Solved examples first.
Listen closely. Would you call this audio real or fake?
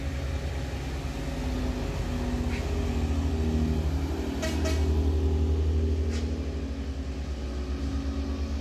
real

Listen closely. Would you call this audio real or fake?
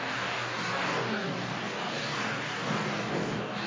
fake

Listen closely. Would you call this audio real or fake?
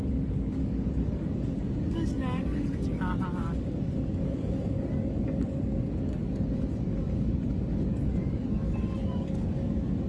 fake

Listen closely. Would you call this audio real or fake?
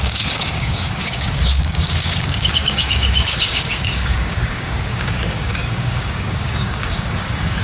fake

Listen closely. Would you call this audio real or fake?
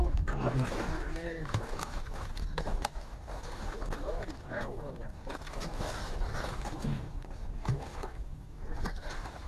fake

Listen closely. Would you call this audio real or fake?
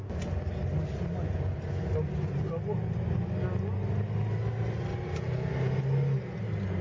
real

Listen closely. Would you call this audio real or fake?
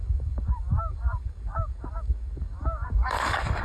fake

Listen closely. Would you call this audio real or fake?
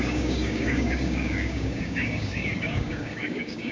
fake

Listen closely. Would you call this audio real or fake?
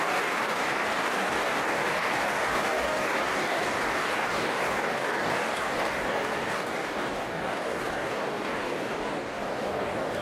fake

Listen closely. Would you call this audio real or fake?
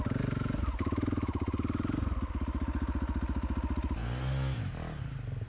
real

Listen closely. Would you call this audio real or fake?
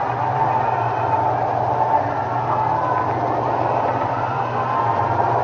real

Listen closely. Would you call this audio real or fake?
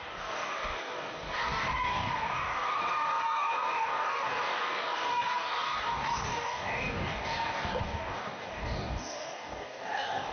fake